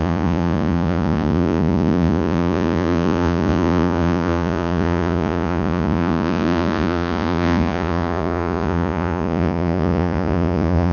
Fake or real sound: fake